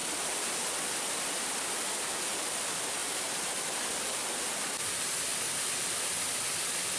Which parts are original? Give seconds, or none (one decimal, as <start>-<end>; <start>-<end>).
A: 0.0-3.0; 4.2-5.3; 6.0-7.0